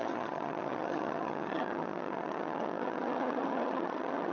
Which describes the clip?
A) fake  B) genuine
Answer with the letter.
A